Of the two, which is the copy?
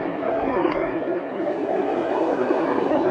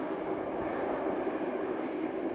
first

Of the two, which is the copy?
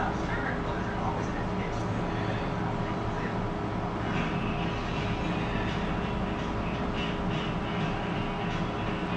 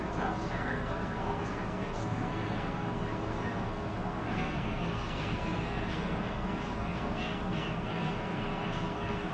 second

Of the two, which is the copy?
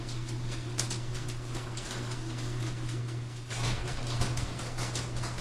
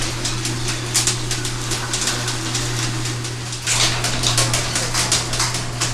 first